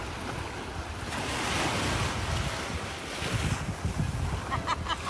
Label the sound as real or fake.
real